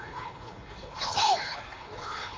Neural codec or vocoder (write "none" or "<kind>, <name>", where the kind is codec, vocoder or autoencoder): codec, HILCodec